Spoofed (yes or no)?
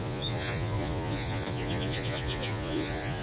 yes